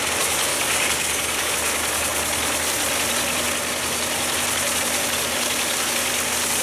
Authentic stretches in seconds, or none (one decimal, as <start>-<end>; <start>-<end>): 0.0-0.5; 1.5-6.6